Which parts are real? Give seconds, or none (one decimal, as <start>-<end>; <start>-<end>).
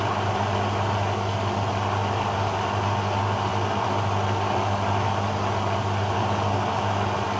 0.0-7.4